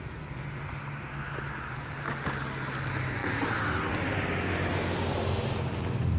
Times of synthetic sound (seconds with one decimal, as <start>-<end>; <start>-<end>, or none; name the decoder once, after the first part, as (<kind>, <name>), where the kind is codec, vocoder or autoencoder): none